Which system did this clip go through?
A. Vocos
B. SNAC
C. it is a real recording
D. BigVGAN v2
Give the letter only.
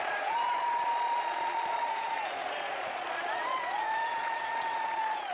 A